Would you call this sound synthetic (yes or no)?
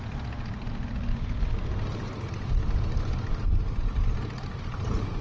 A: no